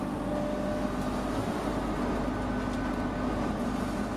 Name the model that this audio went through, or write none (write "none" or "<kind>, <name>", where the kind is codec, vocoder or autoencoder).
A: none